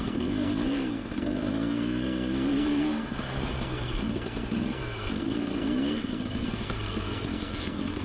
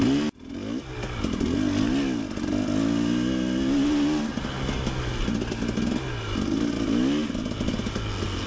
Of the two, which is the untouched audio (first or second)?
second